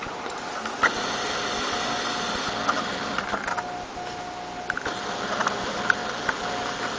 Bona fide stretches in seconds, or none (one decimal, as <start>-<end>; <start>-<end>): 0.0-7.0